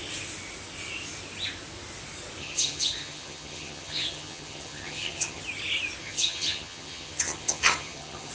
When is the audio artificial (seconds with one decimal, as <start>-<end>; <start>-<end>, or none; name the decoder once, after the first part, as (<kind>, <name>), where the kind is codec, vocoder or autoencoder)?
2.4-5.4 (vocoder, HiFi-GAN); 6.0-8.3